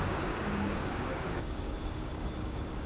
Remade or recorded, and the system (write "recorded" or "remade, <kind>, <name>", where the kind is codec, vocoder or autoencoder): remade, codec, DAC